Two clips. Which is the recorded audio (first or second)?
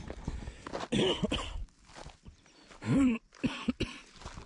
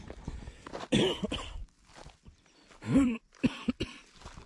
first